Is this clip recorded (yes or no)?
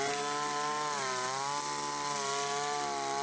yes